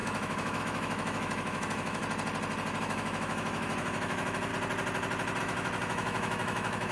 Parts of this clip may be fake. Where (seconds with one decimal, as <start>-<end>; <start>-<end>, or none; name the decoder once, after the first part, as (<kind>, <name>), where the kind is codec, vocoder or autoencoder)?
0.0-2.0 (autoencoder, DAC-VAE); 2.8-4.5; 5.4-6.9